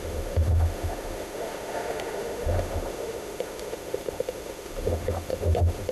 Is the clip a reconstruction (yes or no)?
yes